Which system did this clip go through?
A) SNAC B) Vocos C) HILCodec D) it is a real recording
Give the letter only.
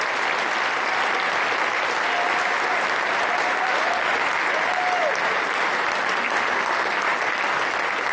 D